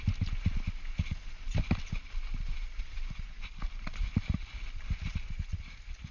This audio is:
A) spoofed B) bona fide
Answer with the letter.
B